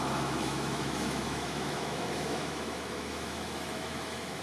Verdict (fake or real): fake